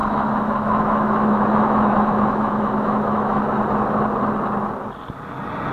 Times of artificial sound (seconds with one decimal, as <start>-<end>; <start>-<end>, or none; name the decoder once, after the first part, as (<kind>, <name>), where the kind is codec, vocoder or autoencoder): 0.0-3.4 (autoencoder, DAC-VAE)